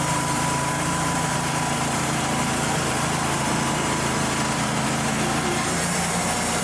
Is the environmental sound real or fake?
fake